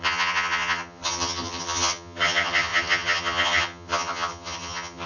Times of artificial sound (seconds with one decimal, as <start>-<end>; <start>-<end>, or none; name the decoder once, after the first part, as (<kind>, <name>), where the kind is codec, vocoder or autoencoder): 0.0-5.1 (vocoder, HiFi-GAN)